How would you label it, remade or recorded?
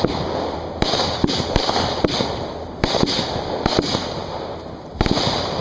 recorded